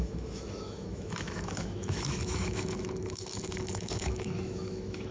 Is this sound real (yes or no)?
no